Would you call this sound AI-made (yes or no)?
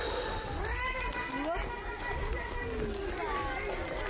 no